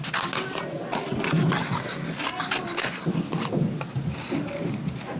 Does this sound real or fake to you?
real